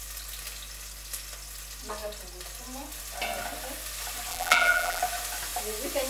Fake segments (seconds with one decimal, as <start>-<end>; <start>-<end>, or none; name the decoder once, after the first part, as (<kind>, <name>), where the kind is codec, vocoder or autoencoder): 4.3-5.0 (vocoder, BigVGAN v2)